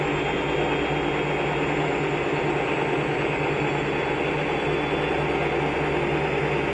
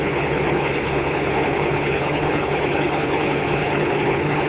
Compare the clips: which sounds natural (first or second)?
first